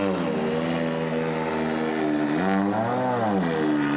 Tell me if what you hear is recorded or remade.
recorded